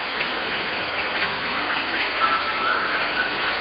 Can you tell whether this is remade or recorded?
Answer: remade